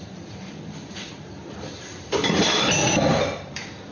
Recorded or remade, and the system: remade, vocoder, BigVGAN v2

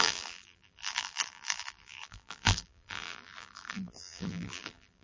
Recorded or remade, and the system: remade, vocoder, BigVGAN v2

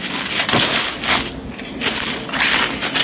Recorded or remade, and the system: recorded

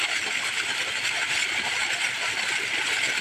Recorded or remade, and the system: recorded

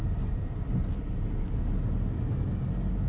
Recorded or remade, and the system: recorded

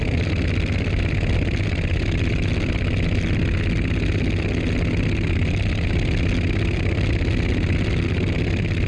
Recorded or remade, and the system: recorded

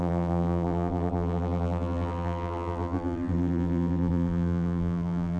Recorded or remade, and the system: remade, vocoder, BigVGAN v2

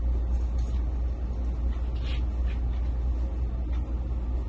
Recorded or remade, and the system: recorded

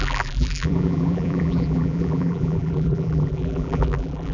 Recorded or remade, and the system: remade, vocoder, BigVGAN v2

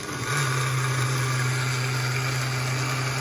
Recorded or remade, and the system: recorded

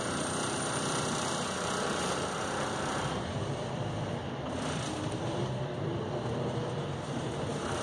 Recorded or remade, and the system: remade, vocoder, BigVGAN v2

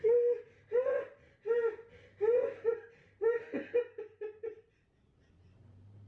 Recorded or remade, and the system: recorded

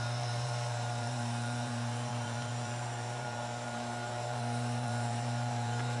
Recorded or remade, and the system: remade, vocoder, BigVGAN v2